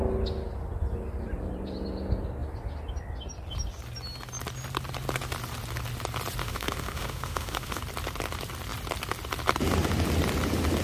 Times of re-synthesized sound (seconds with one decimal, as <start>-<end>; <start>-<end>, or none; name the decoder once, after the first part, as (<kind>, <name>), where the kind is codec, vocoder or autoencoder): 6.4-7.8 (autoencoder, DAC-VAE)